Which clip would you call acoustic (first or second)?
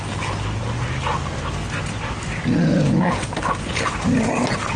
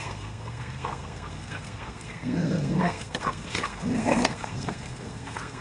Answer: first